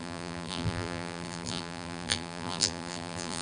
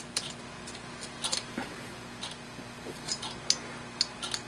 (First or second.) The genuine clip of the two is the second